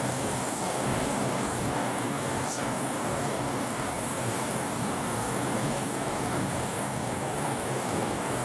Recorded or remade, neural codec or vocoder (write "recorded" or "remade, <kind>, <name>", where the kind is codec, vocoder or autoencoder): remade, codec, DAC